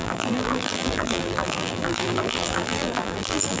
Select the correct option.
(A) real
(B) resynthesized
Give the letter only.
B